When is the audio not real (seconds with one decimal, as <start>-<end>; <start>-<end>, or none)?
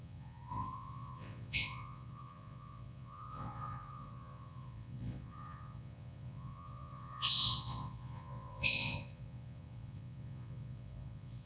0.0-11.5